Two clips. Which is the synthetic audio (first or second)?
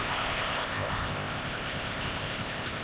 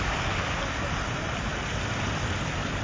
first